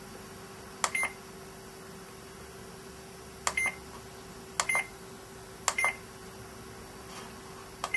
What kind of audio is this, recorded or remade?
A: recorded